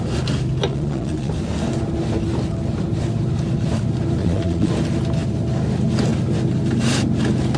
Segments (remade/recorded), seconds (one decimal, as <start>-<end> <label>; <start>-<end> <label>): 0.0-0.7 recorded; 0.7-1.3 remade; 1.3-4.2 recorded; 4.2-4.7 remade; 4.7-7.6 recorded

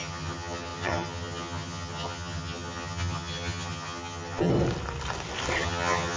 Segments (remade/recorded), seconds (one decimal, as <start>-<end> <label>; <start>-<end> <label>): 0.0-4.5 remade; 4.5-5.6 recorded; 5.6-6.2 remade

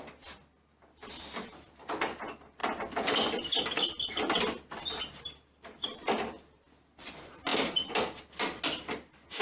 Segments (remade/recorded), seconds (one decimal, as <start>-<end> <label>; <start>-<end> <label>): 0.0-9.4 recorded

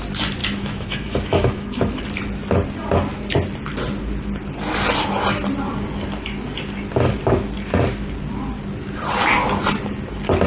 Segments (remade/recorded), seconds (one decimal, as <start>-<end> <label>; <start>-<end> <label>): 0.0-0.4 recorded; 0.4-2.0 remade; 2.0-10.5 recorded

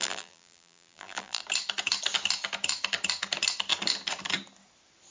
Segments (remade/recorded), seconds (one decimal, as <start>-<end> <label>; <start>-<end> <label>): 0.0-1.4 remade; 1.4-5.1 recorded

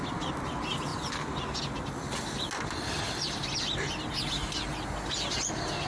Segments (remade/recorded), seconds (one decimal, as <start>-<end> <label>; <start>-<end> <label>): 0.0-5.9 recorded

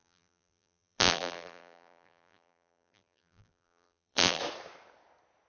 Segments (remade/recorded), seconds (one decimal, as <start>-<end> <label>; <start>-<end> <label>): 0.0-4.4 remade; 4.4-5.5 recorded

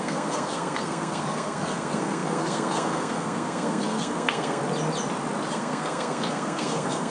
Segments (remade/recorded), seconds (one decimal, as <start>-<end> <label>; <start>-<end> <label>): 0.0-4.6 remade; 4.6-5.5 recorded; 5.5-7.1 remade